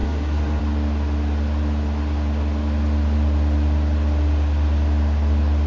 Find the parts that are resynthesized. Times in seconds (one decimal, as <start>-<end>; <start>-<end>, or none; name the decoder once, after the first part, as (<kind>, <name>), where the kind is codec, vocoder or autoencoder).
0.0-0.6 (codec, SNAC)